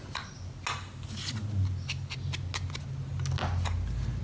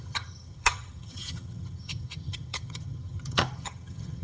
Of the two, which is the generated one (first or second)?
second